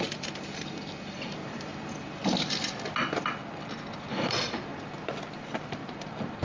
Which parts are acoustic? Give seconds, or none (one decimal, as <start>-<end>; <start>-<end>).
1.7-3.9